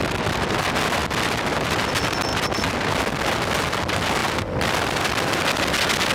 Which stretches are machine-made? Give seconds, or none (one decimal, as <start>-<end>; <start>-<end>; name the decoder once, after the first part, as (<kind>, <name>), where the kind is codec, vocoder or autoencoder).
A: 4.2-5.0 (vocoder, BigVGAN v2)